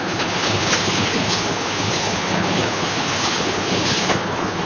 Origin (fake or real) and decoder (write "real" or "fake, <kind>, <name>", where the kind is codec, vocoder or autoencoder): fake, codec, HILCodec